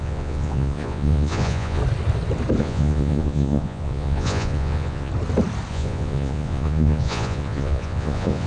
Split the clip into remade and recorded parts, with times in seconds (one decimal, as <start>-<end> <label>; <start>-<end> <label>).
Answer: 0.0-1.8 remade; 1.8-2.6 recorded; 2.6-5.1 remade; 5.1-5.7 recorded; 5.7-8.5 remade